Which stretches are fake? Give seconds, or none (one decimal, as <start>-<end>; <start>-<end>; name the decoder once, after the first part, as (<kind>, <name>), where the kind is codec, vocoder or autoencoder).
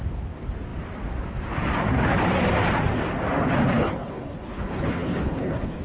3.7-5.8 (codec, HILCodec)